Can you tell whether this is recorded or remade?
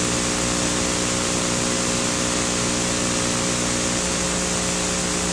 recorded